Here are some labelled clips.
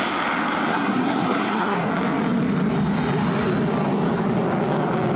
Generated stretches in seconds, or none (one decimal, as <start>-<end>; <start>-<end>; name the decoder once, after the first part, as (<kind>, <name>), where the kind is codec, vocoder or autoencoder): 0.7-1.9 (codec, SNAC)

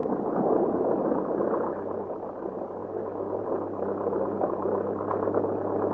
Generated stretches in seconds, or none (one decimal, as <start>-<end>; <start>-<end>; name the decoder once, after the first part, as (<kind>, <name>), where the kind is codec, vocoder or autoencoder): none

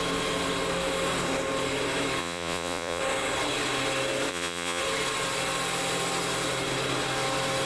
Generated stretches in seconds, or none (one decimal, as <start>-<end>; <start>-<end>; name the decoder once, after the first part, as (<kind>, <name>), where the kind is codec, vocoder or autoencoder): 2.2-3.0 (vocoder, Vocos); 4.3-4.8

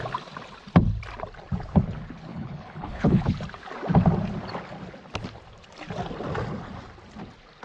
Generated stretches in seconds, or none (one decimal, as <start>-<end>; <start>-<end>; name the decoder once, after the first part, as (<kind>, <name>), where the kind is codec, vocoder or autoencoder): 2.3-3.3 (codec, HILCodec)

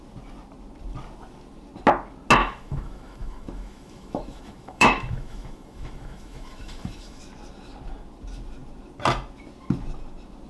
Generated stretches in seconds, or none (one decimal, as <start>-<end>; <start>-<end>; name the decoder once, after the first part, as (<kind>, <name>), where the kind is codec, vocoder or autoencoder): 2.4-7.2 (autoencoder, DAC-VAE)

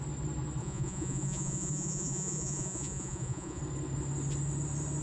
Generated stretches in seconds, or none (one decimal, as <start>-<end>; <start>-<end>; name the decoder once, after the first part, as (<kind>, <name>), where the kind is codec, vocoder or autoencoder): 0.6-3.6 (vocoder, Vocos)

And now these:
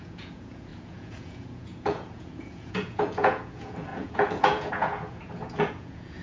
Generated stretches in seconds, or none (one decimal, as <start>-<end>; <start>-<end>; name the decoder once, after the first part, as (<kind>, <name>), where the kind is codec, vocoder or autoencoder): 0.0-6.2 (vocoder, Vocos)